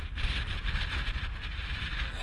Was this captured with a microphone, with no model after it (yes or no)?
yes